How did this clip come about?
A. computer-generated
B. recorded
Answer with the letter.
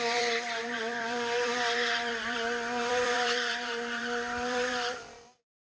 A